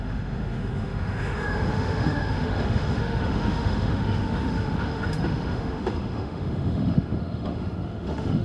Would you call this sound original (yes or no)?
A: no